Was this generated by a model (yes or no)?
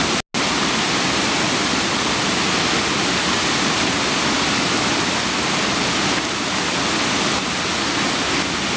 no